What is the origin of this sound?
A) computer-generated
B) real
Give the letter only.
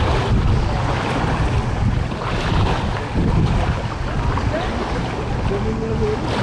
B